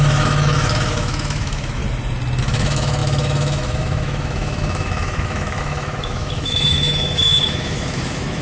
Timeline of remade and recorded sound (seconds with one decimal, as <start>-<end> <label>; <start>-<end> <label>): 0.0-1.8 remade; 1.8-2.4 recorded; 2.4-8.4 remade